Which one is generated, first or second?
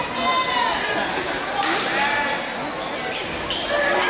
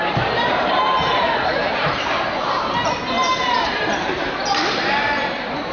second